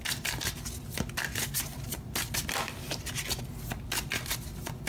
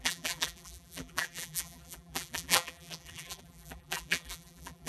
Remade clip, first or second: second